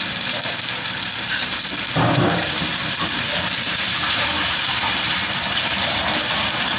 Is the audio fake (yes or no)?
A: yes